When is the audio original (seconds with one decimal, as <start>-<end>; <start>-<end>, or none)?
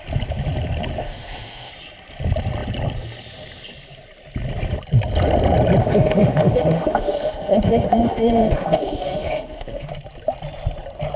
0.0-1.0; 1.7-5.8; 9.9-11.2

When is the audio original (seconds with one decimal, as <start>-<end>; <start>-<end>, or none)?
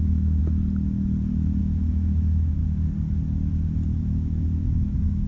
0.4-1.6; 2.6-4.0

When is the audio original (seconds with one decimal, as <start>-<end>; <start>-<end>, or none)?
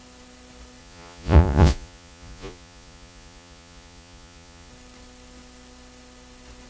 0.0-0.8; 4.7-6.7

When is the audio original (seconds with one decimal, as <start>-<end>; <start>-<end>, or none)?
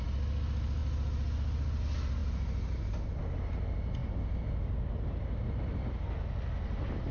0.0-2.2; 3.2-4.0; 4.8-7.1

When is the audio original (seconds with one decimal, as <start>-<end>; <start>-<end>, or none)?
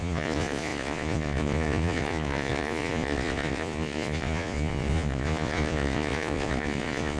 none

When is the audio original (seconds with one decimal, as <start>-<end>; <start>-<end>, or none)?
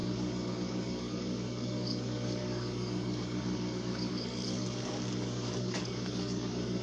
none